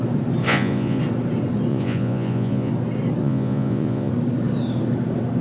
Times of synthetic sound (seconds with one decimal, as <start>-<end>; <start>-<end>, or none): 0.4-1.0; 1.7-2.7; 3.2-4.1